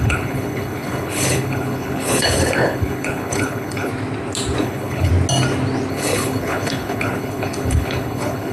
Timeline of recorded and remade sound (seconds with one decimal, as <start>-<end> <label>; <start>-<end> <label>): 0.0-3.9 remade; 3.9-4.6 recorded; 4.6-5.1 remade; 5.1-5.9 recorded; 5.9-8.5 remade